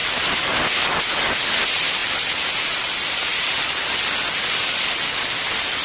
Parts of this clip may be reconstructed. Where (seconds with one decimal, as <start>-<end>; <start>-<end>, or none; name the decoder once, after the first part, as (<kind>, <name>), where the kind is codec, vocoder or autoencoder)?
none